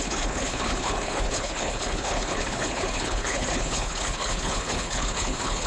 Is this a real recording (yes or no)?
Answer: no